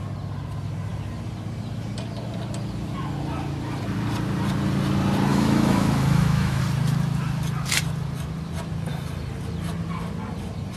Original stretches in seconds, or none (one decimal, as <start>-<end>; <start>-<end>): 0.0-5.3; 6.6-10.8